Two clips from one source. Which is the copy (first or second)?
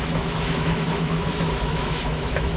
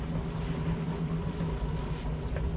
first